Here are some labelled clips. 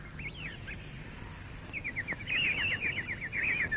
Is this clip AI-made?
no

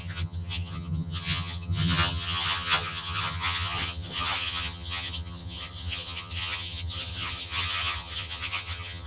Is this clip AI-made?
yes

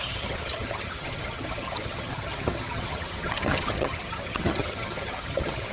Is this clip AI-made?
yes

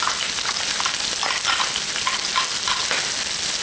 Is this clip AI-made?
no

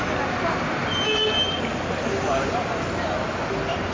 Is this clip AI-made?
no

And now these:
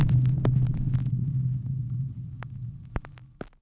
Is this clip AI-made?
no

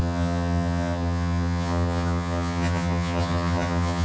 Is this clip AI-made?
yes